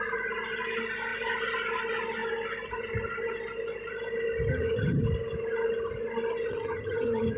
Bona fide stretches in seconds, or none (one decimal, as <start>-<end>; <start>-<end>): 0.0-4.5; 5.0-6.5